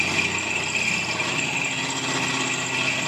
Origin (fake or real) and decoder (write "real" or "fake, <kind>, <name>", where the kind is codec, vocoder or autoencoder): real